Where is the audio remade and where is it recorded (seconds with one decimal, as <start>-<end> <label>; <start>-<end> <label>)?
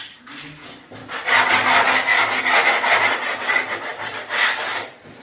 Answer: 0.0-1.0 remade; 1.0-2.4 recorded; 2.4-5.2 remade